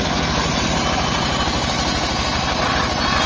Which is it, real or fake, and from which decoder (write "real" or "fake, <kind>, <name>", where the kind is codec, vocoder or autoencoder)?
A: real